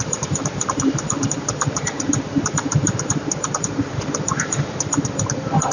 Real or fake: fake